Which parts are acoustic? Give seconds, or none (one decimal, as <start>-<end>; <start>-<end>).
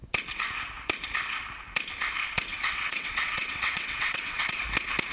0.0-2.5; 4.6-5.1